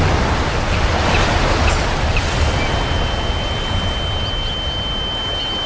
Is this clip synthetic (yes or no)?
no